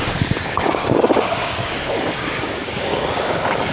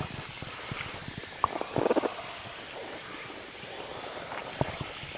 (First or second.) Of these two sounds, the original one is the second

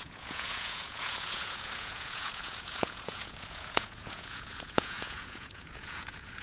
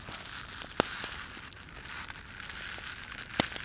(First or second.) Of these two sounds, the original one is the second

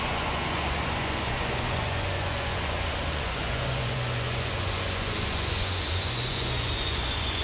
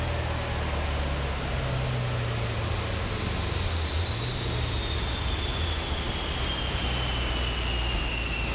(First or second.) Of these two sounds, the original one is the second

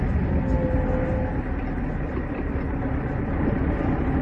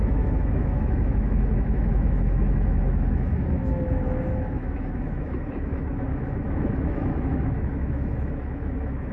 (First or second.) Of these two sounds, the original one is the first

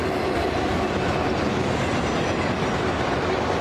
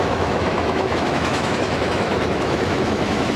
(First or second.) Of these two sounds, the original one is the first